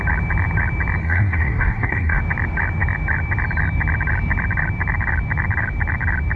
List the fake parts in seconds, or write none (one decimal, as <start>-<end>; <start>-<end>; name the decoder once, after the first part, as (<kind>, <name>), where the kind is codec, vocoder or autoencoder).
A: 1.0-2.2 (codec, SNAC)